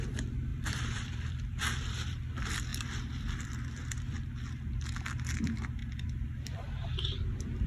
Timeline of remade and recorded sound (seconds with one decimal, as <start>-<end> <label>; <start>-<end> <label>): 0.0-0.5 recorded; 0.5-2.3 remade; 2.3-2.7 recorded; 2.7-4.3 remade; 4.3-5.8 recorded; 5.8-7.0 remade; 7.0-7.7 recorded